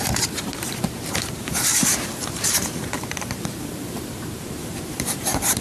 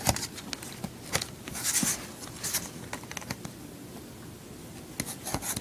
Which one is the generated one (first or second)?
first